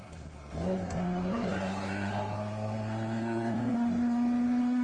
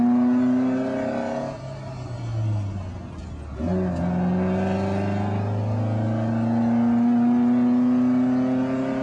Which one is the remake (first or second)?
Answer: first